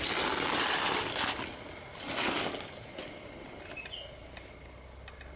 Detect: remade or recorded recorded